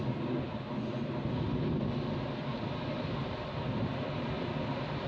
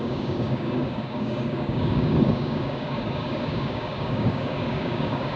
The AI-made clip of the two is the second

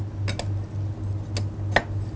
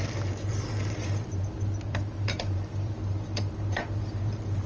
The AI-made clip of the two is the second